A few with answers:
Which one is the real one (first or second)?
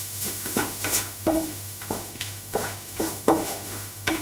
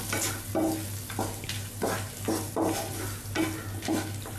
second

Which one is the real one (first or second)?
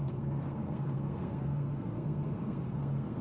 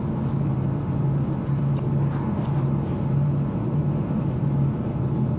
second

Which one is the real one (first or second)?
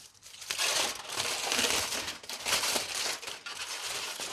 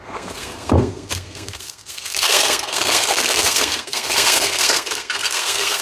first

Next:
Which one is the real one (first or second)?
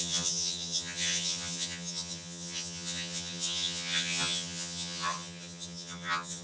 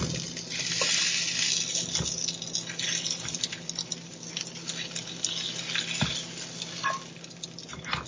second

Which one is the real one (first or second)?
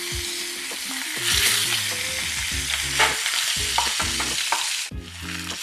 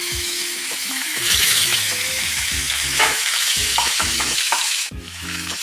first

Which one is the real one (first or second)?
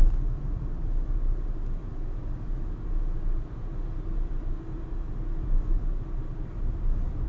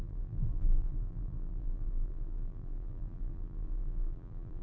first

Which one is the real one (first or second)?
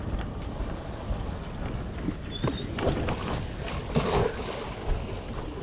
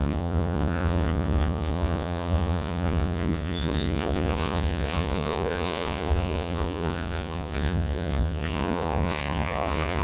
first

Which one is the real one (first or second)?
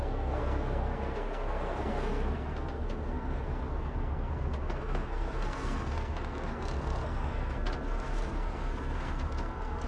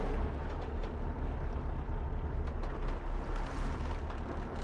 second